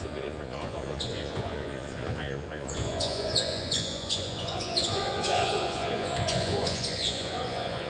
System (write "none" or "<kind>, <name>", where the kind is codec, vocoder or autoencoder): vocoder, Vocos